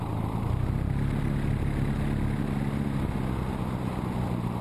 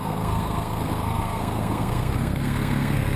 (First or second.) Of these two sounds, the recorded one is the first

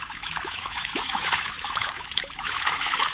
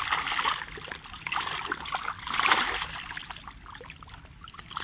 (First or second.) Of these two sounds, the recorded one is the second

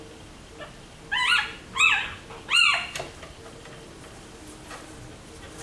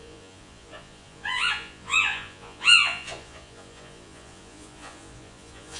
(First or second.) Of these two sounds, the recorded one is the first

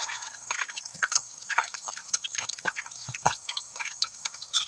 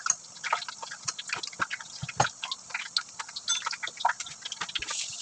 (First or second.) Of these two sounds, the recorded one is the second